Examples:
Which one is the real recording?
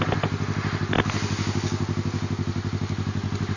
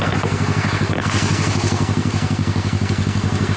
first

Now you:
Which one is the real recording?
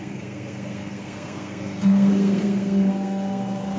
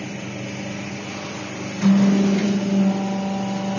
second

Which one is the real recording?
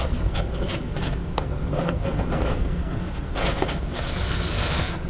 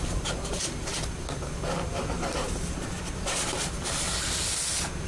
second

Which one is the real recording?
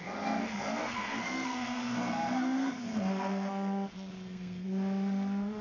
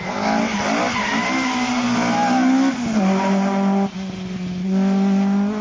second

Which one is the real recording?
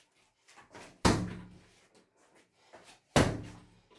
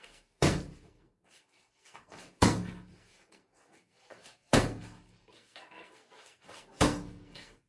first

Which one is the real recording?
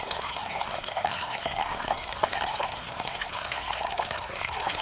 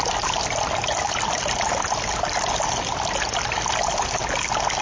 second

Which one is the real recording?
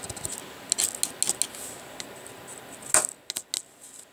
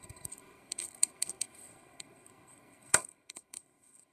first